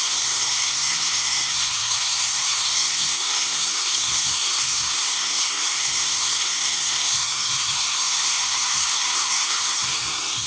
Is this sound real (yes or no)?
no